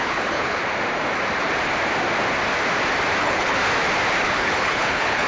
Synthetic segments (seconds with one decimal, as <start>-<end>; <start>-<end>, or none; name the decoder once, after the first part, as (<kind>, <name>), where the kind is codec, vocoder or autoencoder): 0.0-0.6 (codec, HILCodec); 3.2-3.6; 4.2-5.3